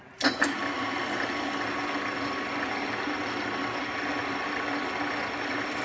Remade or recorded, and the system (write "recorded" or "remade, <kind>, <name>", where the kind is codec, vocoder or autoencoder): recorded